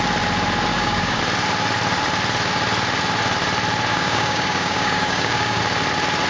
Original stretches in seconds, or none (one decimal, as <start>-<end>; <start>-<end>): 0.0-0.7; 1.2-3.9; 5.6-6.3